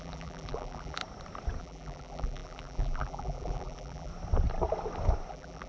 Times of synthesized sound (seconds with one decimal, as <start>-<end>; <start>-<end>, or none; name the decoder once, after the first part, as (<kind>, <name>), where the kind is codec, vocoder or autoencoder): 0.0-1.0 (vocoder, BigVGAN v2); 1.6-4.1; 5.3-5.7